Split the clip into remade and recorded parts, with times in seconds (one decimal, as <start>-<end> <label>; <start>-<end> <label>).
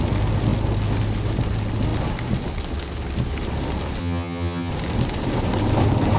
0.0-4.0 recorded; 4.0-4.7 remade; 4.7-6.2 recorded